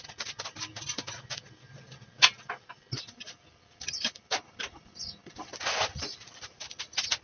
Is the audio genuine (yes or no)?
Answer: yes